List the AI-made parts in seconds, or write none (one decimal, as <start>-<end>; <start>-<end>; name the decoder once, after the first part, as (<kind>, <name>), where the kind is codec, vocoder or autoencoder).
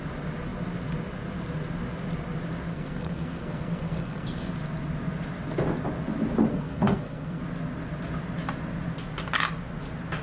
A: 2.7-4.5 (codec, SNAC); 6.5-7.4